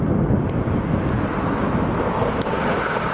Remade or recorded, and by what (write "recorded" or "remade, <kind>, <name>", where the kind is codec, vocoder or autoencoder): recorded